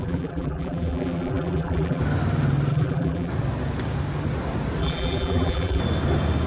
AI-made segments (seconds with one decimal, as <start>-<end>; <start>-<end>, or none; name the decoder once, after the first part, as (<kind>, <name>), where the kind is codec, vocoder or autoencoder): 0.0-2.0 (vocoder, BigVGAN v2); 2.7-3.3; 4.8-5.8